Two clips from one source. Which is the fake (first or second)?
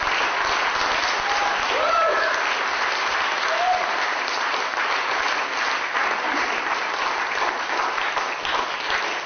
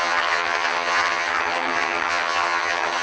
second